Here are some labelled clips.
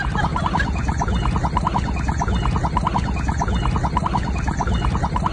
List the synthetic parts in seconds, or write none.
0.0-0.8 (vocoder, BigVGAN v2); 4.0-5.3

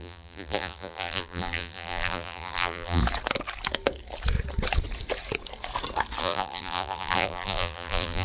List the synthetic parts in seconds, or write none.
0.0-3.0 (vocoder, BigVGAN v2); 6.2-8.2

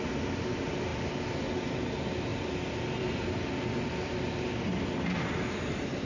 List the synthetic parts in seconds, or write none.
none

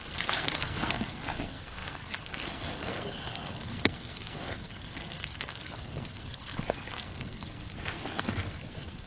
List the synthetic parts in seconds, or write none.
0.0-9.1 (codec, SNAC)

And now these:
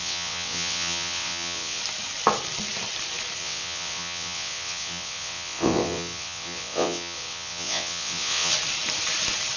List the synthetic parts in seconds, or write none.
0.0-1.8 (vocoder, WaveNeXt); 3.4-8.5

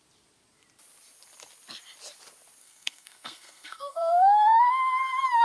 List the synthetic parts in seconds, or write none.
2.6-4.7 (codec, SNAC)

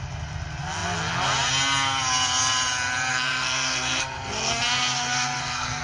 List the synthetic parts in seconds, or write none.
3.1-5.8 (codec, SNAC)

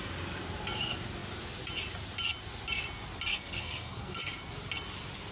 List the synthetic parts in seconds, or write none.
3.3-4.2 (codec, SNAC)